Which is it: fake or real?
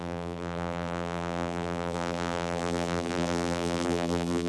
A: fake